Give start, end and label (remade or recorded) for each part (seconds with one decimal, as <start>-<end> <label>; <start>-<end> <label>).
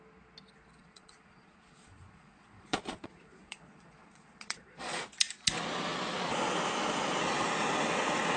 0.0-0.8 recorded; 0.8-5.0 remade; 5.0-8.4 recorded